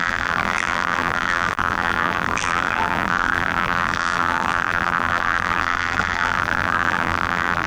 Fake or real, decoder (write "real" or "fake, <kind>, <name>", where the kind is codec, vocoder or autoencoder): fake, vocoder, BigVGAN v2